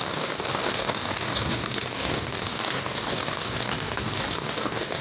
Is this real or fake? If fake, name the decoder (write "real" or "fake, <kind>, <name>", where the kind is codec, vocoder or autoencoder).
fake, codec, DAC